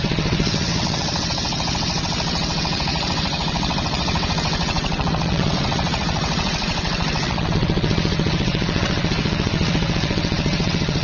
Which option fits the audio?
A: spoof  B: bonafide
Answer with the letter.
A